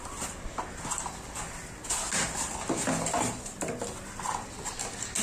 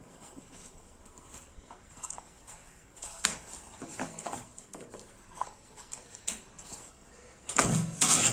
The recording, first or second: first